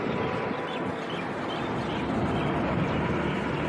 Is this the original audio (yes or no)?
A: yes